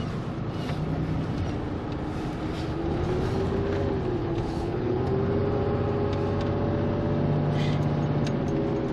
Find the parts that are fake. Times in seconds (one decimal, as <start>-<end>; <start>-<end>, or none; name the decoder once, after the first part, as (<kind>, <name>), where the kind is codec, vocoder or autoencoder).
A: 4.2-5.0 (codec, HILCodec)